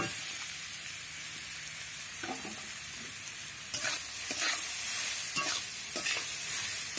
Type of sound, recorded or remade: recorded